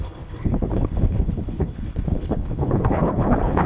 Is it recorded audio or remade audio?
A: remade